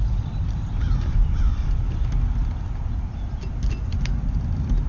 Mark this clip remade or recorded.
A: recorded